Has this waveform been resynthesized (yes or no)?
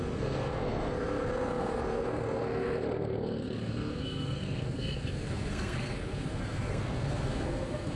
yes